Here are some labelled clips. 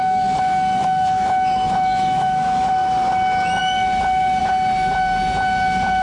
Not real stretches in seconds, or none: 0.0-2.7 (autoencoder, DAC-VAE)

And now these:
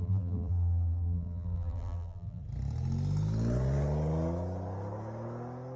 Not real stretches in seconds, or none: 0.0-2.4 (vocoder, BigVGAN v2)

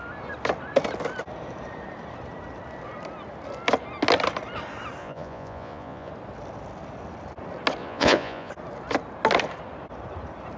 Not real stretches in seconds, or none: 5.0-6.1 (vocoder, Vocos); 7.8-8.5

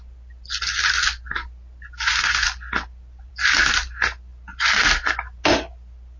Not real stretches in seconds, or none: none

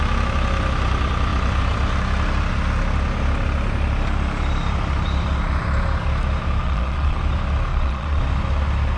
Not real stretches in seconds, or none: 6.6-7.2 (vocoder, Vocos); 7.7-8.2

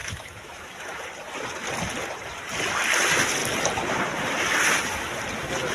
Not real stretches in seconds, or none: 0.0-1.0 (autoencoder, DAC-VAE)